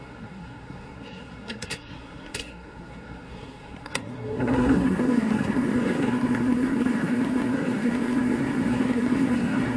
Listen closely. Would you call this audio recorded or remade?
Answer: remade